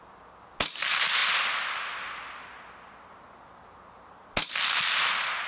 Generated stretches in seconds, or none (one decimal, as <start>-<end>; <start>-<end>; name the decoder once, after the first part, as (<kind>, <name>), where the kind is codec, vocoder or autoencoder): none